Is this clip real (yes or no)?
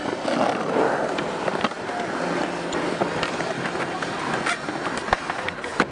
yes